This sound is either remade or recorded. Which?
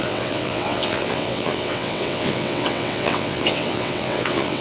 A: remade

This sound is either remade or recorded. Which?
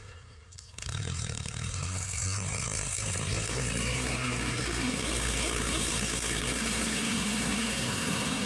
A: remade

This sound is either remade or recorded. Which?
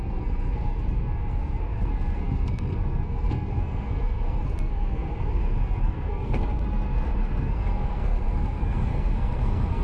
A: remade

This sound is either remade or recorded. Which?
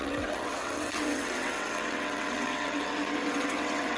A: remade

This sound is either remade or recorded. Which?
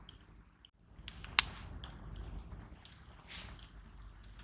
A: recorded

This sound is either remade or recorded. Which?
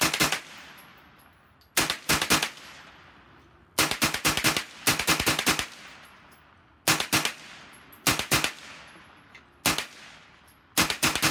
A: recorded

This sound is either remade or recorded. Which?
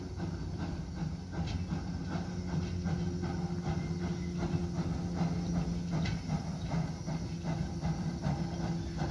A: recorded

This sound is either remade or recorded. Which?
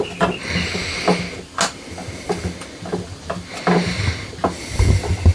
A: recorded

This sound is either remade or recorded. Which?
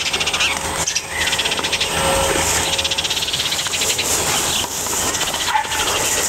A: recorded